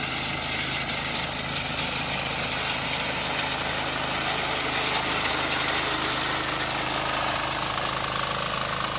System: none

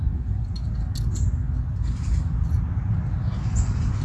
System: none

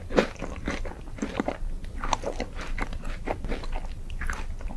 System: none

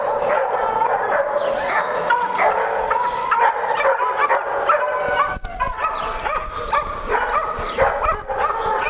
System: none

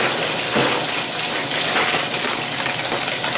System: none